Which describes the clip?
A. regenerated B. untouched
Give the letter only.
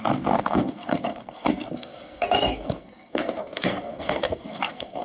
A